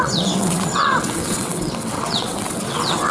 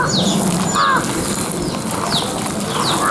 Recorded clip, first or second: second